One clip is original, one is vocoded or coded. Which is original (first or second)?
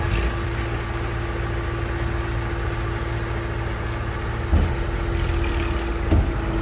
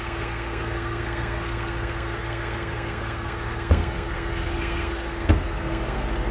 first